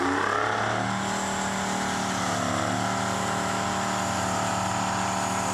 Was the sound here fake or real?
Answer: real